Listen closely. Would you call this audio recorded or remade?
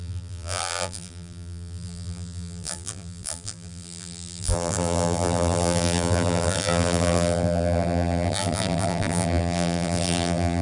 remade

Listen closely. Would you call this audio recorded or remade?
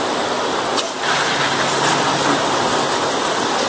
recorded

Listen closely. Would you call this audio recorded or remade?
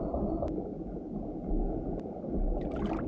recorded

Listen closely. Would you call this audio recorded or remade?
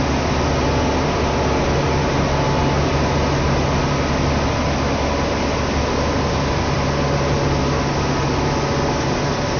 recorded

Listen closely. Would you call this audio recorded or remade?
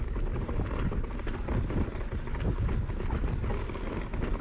recorded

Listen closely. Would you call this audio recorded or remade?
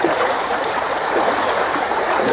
remade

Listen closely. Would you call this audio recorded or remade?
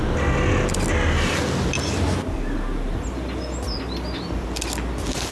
recorded